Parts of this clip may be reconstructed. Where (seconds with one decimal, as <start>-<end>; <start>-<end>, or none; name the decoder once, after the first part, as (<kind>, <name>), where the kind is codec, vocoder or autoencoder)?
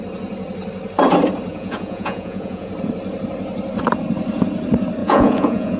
1.5-2.7 (vocoder, Vocos); 5.0-5.8